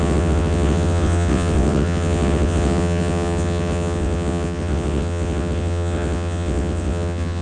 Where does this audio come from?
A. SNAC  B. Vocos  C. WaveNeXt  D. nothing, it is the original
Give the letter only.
C